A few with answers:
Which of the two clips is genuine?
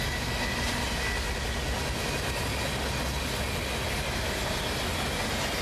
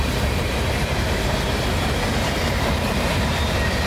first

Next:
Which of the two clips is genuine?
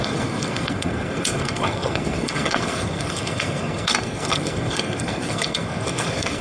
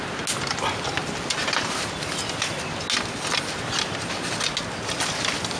second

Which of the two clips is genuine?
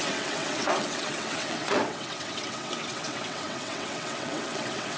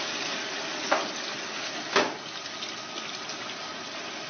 second